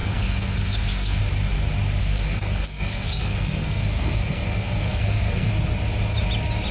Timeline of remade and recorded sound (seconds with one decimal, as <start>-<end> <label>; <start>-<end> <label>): 0.0-1.2 remade; 1.2-2.0 recorded; 2.0-5.5 remade; 5.5-6.7 recorded